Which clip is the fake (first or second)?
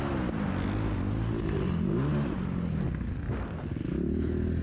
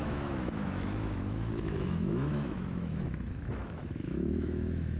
second